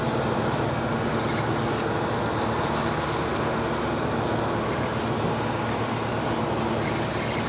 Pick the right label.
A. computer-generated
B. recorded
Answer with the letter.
B